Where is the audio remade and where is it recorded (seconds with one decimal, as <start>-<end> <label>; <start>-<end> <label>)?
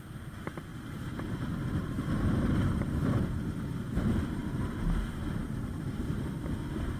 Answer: 0.0-0.7 recorded; 0.7-4.9 remade; 4.9-7.0 recorded